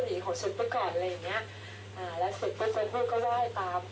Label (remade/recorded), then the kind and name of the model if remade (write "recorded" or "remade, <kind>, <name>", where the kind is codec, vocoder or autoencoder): recorded